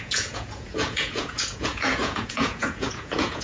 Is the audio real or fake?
fake